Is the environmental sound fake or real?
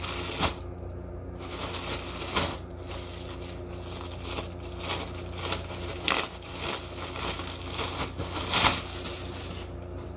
real